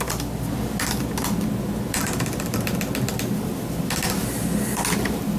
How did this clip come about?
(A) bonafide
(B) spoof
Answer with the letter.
A